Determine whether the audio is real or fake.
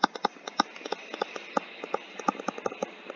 real